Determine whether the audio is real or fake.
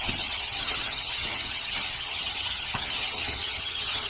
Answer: fake